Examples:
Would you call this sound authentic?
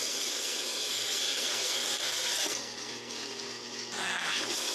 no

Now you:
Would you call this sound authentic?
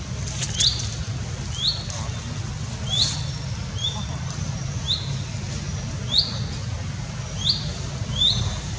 yes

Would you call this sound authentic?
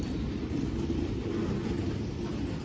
yes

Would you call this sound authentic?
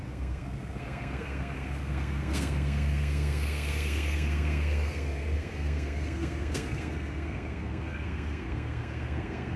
no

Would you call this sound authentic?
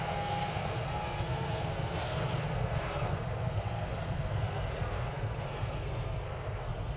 no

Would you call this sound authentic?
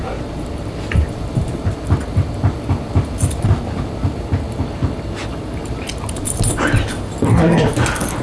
yes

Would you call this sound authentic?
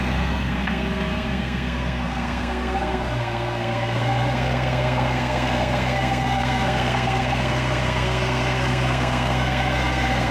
no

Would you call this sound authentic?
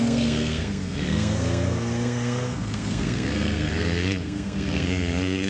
no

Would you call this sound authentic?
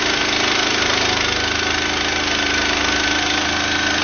yes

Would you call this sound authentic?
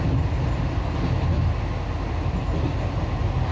yes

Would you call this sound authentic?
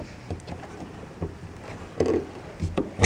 yes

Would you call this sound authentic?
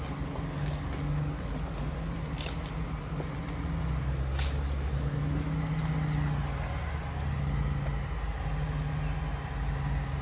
yes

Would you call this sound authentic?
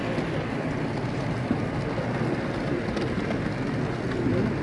yes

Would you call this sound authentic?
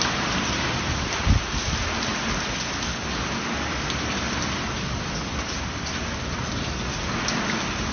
yes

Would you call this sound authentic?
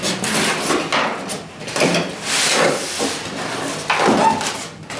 yes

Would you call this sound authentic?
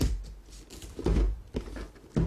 yes